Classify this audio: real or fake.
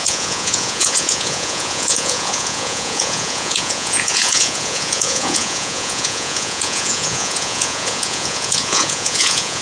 fake